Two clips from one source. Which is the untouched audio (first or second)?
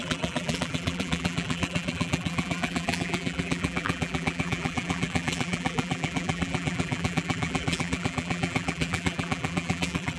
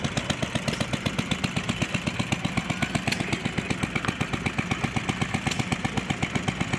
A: second